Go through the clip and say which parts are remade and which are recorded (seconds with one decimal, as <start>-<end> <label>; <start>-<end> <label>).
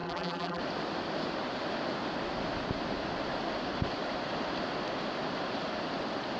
0.0-0.6 remade; 0.6-6.4 recorded